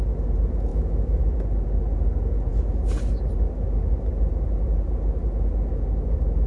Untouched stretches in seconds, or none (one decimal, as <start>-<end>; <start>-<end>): 0.0-0.7; 1.2-6.5